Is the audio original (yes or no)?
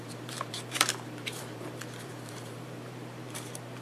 no